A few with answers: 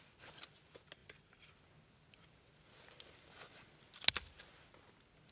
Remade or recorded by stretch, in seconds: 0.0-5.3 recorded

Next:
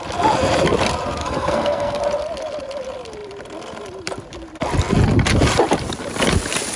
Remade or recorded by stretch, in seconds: 0.0-1.2 recorded; 1.2-2.0 remade; 2.0-6.8 recorded

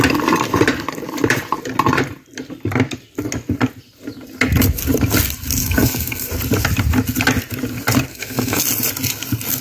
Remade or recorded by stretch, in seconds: 0.0-5.6 recorded; 5.6-6.3 remade; 6.3-8.1 recorded; 8.1-8.6 remade; 8.6-9.6 recorded